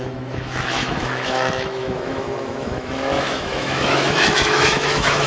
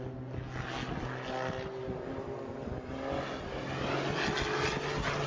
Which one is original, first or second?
second